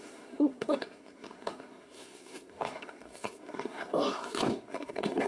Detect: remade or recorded remade